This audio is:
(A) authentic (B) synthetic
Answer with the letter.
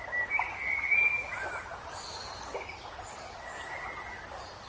A